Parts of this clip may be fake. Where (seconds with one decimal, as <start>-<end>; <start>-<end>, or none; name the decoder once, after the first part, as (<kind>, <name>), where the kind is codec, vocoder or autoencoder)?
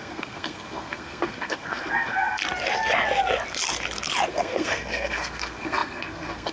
0.0-2.4 (codec, SNAC); 4.3-6.5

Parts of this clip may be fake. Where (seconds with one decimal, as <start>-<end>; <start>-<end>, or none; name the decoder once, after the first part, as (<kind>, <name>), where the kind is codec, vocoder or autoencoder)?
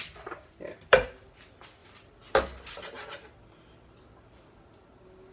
none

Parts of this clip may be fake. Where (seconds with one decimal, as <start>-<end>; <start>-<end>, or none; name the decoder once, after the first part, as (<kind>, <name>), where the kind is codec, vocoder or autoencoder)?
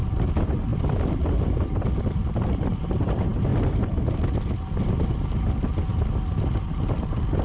none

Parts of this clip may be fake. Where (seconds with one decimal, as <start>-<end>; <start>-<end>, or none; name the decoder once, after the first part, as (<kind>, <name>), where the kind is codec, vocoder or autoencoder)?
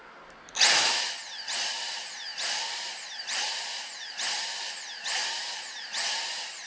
none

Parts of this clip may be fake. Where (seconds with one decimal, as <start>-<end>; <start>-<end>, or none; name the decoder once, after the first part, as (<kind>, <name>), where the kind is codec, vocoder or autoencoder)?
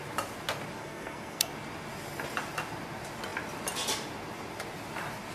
0.8-1.5 (codec, SNAC)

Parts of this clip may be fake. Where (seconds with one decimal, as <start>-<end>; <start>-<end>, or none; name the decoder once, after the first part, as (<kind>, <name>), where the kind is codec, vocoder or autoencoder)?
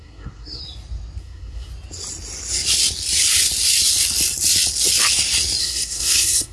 0.0-0.6 (codec, SNAC); 1.2-1.7; 5.6-6.5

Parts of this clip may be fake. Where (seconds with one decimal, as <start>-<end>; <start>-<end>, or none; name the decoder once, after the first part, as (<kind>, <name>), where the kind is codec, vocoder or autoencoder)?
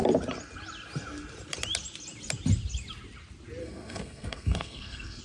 3.6-5.2 (codec, SNAC)